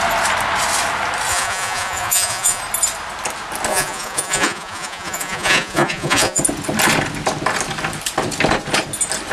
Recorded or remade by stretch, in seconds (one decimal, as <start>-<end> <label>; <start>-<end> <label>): 0.0-1.3 recorded; 1.3-2.6 remade; 2.6-3.7 recorded; 3.7-6.4 remade; 6.4-9.3 recorded